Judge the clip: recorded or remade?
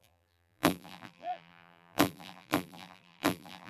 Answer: remade